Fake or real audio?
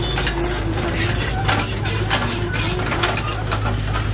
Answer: real